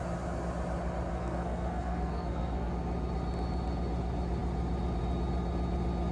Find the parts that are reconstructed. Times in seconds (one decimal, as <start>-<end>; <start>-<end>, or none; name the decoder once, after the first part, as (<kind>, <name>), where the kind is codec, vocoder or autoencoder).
1.1-2.7 (codec, SNAC)